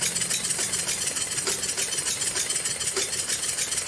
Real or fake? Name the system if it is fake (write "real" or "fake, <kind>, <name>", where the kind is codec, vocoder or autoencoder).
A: real